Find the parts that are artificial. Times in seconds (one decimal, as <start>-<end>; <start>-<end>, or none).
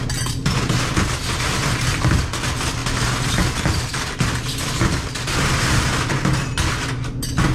none